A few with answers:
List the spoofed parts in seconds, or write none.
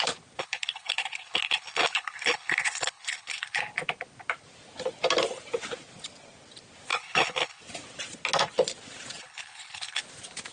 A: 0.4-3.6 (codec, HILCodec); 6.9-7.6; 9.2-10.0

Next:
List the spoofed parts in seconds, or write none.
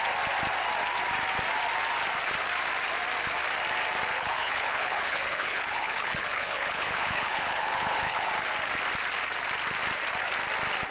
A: 4.1-8.3 (codec, HILCodec)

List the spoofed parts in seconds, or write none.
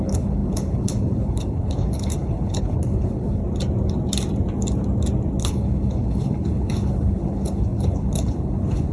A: 0.0-3.4 (codec, HILCodec); 5.4-8.9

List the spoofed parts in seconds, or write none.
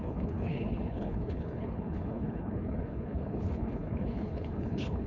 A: 0.0-5.1 (codec, HILCodec)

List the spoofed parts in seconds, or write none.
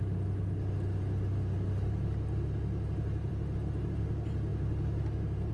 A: none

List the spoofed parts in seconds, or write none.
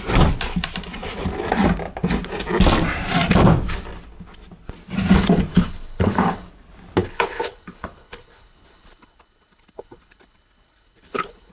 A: 5.5-6.5 (codec, HILCodec); 7.0-11.5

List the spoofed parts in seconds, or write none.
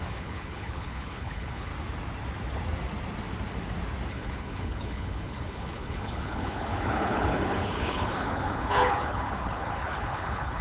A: 0.0-1.7 (codec, HILCodec); 4.1-10.6